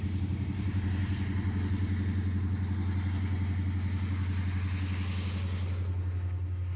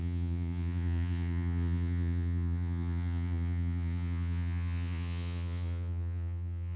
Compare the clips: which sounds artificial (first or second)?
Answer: second